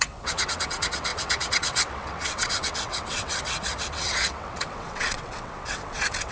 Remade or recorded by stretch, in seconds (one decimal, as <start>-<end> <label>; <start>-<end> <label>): 0.0-6.3 remade